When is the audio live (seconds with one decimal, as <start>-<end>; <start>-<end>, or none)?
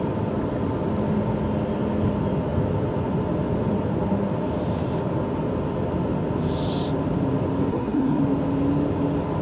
0.0-7.7; 8.2-9.4